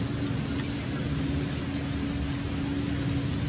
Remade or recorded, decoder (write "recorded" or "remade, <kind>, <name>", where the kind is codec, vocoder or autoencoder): recorded